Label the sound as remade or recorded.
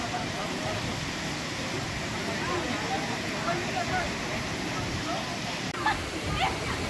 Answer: recorded